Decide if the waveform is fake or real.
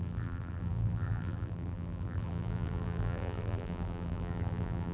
fake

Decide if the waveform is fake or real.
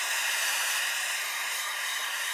fake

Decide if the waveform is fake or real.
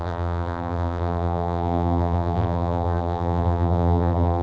fake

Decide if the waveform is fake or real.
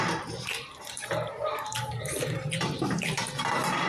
fake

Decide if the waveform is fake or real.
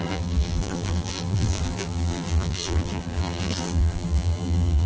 fake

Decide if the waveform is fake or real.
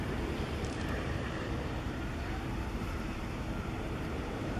fake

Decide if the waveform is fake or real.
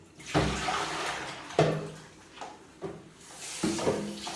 real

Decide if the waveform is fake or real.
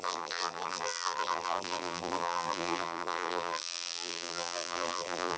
fake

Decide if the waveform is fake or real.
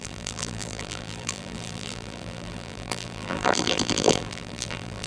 fake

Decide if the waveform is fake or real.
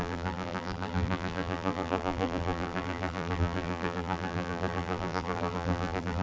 fake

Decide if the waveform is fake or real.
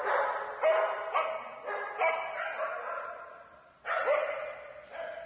real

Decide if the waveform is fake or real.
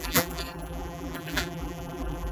fake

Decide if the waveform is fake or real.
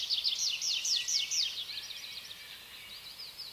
real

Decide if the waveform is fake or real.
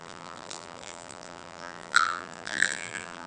fake